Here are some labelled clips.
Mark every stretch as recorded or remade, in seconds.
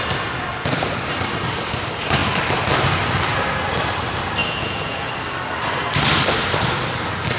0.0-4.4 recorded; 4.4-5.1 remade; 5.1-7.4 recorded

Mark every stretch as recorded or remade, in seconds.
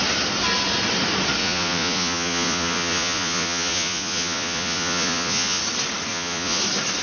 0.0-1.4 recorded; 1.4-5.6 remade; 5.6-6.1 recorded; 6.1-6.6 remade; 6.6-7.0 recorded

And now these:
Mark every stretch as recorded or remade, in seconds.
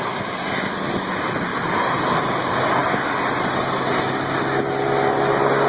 0.0-5.7 recorded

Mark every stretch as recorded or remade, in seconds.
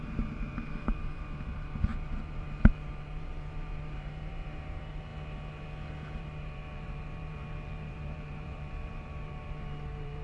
0.0-5.1 remade; 5.1-6.2 recorded; 6.2-10.2 remade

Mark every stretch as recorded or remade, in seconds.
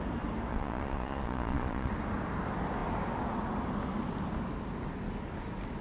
0.0-0.5 recorded; 0.5-1.9 remade; 1.9-5.8 recorded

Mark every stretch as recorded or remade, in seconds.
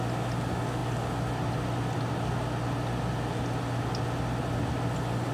0.0-5.3 recorded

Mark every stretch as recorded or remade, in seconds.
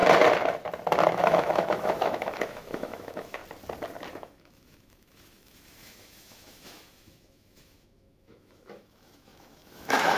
0.0-1.1 recorded; 1.1-3.4 remade; 3.4-4.1 recorded; 4.1-10.2 remade